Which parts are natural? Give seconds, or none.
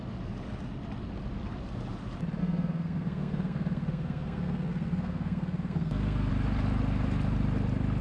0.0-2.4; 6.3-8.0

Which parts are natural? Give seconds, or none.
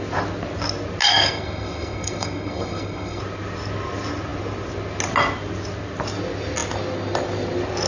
0.0-1.0; 3.2-7.9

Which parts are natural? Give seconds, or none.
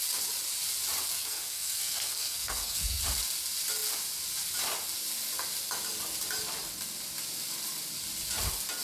0.0-1.1; 3.0-8.8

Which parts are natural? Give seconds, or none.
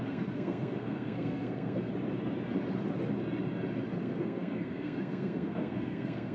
1.9-4.0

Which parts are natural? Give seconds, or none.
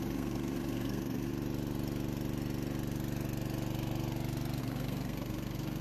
1.3-4.6